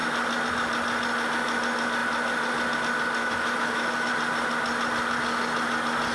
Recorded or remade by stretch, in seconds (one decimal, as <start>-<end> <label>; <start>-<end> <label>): 0.0-3.2 recorded; 3.2-4.1 remade; 4.1-6.1 recorded